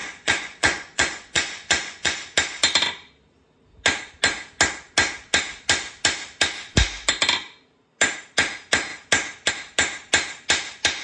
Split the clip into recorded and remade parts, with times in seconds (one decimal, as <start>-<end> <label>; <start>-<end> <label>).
0.0-2.2 remade; 2.2-11.0 recorded